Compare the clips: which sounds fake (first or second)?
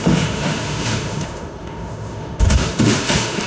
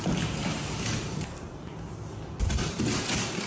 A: first